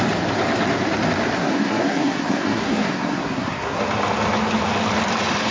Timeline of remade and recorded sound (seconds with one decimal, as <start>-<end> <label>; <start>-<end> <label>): 0.0-1.4 recorded; 1.4-3.8 remade; 3.8-5.5 recorded